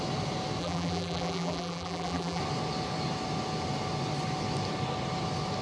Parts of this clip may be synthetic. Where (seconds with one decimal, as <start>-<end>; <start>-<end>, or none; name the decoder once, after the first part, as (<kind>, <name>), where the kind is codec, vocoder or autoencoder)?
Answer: 0.6-2.4 (vocoder, BigVGAN v2)